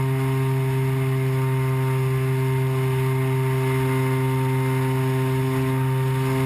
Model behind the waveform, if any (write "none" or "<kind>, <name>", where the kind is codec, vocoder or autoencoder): none